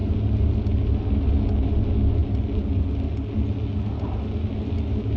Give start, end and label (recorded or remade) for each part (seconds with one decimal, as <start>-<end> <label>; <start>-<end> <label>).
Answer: 0.0-5.2 recorded